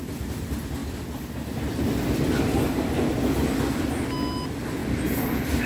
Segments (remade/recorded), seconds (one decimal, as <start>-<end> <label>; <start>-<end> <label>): 0.0-5.7 recorded